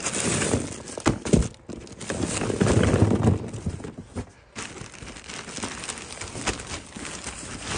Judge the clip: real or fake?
real